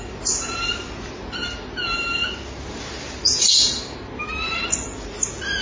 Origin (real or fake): real